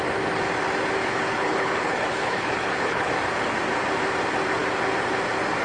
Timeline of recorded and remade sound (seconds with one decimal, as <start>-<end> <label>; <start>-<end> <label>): 0.0-1.0 recorded; 1.0-3.1 remade; 3.1-5.6 recorded